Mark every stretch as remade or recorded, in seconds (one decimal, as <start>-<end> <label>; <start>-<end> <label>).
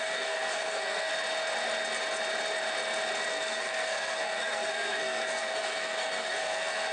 0.0-1.1 remade; 1.1-3.3 recorded; 3.3-6.9 remade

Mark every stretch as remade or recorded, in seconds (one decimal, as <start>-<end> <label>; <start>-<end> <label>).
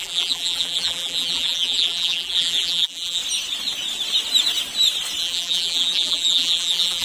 0.0-3.2 remade; 3.2-5.2 recorded; 5.2-7.0 remade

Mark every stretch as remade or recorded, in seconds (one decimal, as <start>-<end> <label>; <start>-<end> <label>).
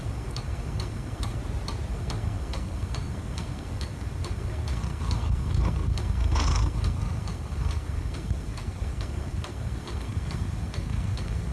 0.0-1.4 remade; 1.4-1.9 recorded; 1.9-11.5 remade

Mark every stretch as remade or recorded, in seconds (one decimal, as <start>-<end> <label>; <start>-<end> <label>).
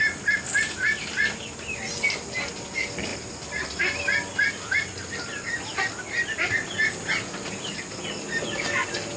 0.0-9.2 recorded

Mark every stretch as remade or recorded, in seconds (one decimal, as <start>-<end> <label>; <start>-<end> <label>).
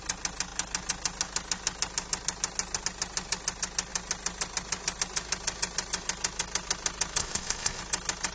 0.0-7.2 recorded; 7.2-7.8 remade; 7.8-8.3 recorded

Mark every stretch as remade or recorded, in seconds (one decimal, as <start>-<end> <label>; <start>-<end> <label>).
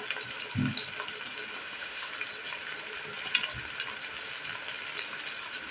0.0-1.6 recorded; 1.6-2.1 remade; 2.1-5.7 recorded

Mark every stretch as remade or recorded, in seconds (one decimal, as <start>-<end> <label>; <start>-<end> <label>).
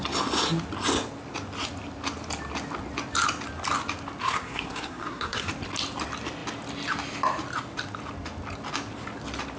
0.0-4.2 recorded; 4.2-5.5 remade; 5.5-9.6 recorded